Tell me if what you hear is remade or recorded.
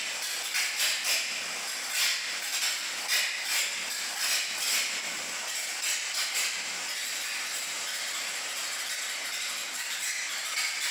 recorded